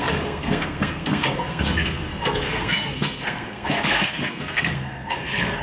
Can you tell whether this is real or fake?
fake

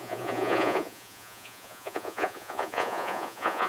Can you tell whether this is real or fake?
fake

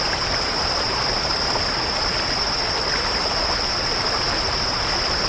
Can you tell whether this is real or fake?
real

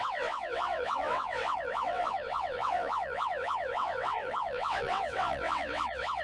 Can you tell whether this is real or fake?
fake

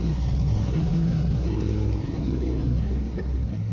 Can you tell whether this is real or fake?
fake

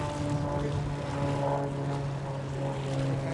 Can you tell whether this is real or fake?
real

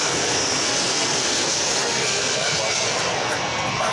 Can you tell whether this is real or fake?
fake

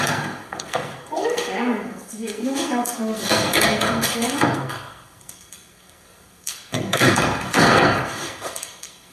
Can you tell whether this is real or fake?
fake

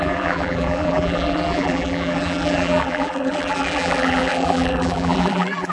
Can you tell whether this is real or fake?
fake